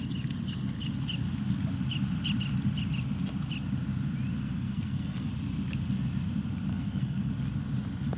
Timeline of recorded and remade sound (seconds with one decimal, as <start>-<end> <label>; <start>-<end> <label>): 0.0-4.4 recorded; 4.4-5.3 remade; 5.3-6.7 recorded; 6.7-7.3 remade; 7.3-8.2 recorded